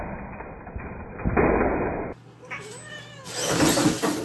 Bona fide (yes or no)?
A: yes